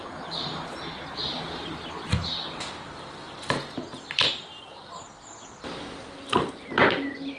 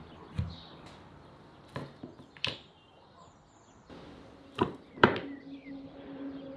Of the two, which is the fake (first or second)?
second